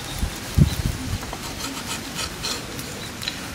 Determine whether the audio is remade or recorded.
recorded